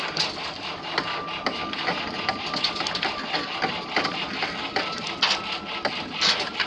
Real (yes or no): yes